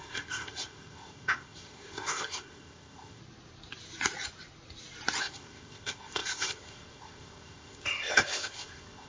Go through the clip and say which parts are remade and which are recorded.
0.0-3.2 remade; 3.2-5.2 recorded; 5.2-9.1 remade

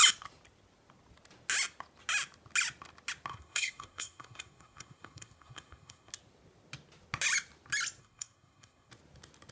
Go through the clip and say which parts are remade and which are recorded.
0.0-3.3 recorded; 3.3-6.1 remade; 6.1-8.0 recorded; 8.0-8.9 remade; 8.9-9.5 recorded

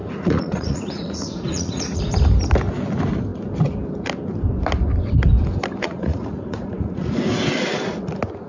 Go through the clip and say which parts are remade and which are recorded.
0.0-2.0 remade; 2.0-5.8 recorded; 5.8-7.2 remade; 7.2-8.5 recorded

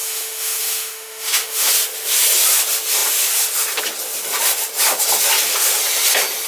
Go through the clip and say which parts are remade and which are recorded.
0.0-1.7 remade; 1.7-6.5 recorded

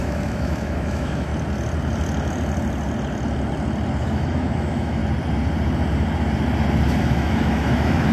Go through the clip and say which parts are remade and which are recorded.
0.0-1.3 remade; 1.3-4.0 recorded; 4.0-5.0 remade; 5.0-7.0 recorded; 7.0-8.1 remade

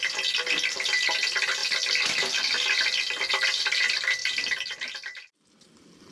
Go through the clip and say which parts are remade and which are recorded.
0.0-6.1 recorded

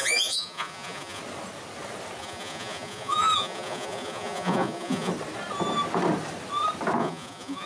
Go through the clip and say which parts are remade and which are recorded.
0.0-1.2 remade; 1.2-2.2 recorded; 2.2-5.1 remade; 5.1-7.0 recorded; 7.0-7.7 remade